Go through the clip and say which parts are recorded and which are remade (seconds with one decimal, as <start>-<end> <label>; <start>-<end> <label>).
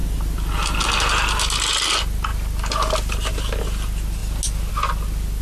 0.0-5.4 recorded